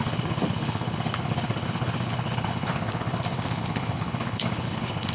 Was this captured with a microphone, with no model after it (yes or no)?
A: no